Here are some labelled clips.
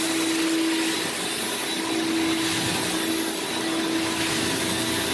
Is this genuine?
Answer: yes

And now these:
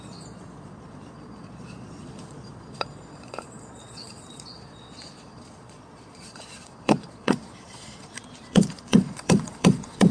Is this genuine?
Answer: no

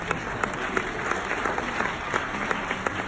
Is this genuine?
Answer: yes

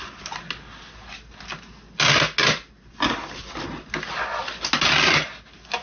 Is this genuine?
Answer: yes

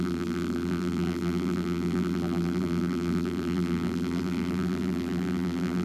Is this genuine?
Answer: no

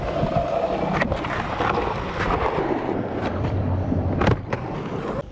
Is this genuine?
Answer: no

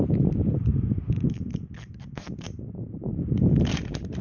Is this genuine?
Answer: no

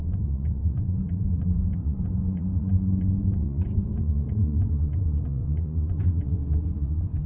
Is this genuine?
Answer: no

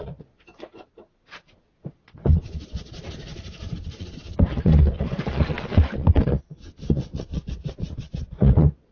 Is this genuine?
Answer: no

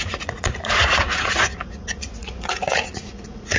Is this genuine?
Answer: no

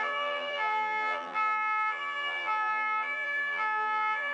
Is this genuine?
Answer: no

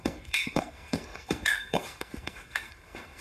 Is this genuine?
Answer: no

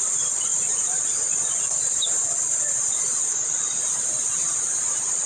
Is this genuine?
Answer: no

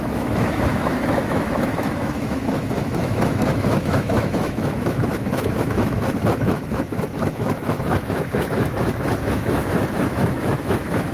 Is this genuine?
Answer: no